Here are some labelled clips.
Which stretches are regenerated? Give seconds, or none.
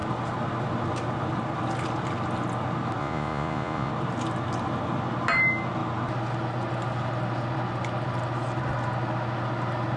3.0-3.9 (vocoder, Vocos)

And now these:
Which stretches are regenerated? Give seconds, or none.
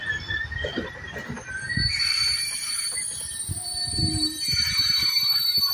2.2-5.7 (vocoder, BigVGAN v2)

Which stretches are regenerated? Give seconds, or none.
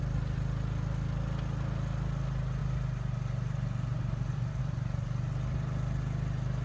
none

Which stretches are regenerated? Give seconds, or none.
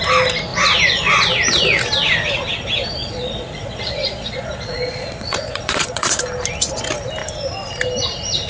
3.0-6.2 (vocoder, Vocos)